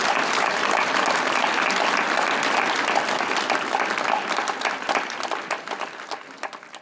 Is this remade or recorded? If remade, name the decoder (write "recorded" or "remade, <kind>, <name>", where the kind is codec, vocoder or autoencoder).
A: recorded